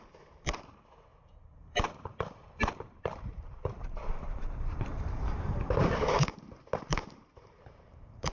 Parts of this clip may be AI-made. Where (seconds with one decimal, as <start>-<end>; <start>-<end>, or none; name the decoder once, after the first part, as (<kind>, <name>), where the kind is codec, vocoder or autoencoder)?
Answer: 0.0-8.3 (vocoder, BigVGAN v2)